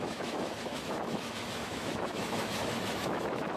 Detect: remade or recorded remade